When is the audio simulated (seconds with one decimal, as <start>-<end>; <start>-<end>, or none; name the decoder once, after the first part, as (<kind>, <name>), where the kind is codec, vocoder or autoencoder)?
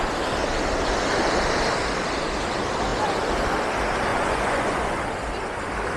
4.1-5.0 (vocoder, Vocos)